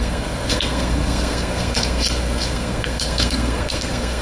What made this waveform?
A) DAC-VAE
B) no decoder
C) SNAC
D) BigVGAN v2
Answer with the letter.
C